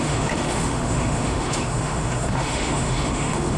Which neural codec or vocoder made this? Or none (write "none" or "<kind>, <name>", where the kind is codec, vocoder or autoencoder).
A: autoencoder, DAC-VAE